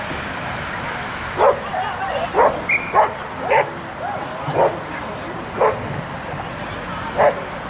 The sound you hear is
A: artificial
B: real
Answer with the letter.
B